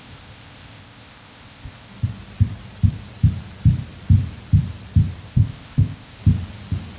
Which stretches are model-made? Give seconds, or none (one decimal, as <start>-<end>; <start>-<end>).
0.0-1.9; 5.3-6.2